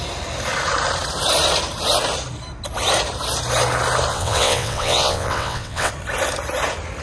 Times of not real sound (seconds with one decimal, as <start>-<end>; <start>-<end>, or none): 4.1-5.9